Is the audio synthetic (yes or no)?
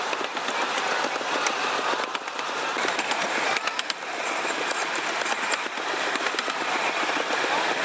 no